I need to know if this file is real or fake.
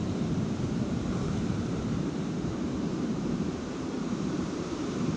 fake